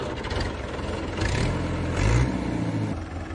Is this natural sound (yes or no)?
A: yes